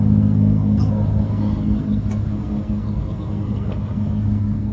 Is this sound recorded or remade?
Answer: remade